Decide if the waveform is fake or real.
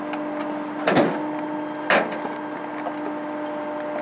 real